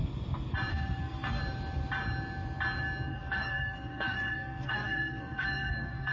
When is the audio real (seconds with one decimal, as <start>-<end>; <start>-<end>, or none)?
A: 0.0-0.7; 1.4-3.1